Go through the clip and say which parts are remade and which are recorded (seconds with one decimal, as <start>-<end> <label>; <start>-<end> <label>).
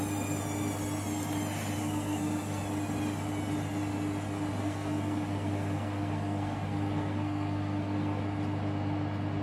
0.0-1.8 recorded; 1.8-2.6 remade; 2.6-4.6 recorded; 4.6-8.2 remade; 8.2-9.4 recorded